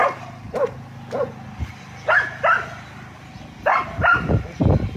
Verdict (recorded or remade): recorded